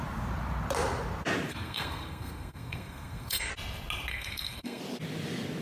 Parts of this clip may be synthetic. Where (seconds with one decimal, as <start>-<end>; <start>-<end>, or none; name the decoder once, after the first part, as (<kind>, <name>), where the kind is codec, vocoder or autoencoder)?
1.5-3.5 (codec, SNAC); 4.1-4.8